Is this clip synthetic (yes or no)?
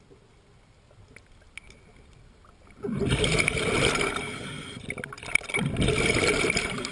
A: no